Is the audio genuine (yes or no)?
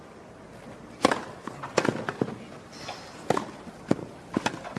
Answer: yes